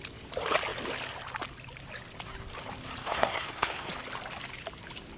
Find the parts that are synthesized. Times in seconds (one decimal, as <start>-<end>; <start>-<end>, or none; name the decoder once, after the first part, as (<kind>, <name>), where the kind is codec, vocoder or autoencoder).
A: 3.0-3.9 (codec, SNAC)